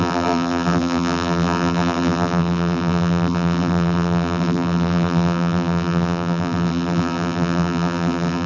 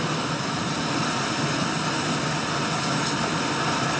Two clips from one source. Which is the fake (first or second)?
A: first